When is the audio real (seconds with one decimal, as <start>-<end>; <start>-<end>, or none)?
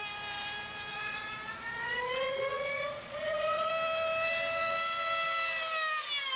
0.0-0.9; 3.7-6.3